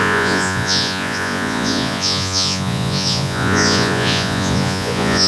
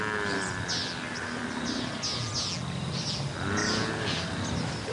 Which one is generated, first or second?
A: first